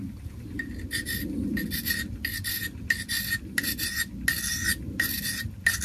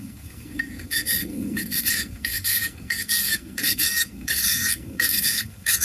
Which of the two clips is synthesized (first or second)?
second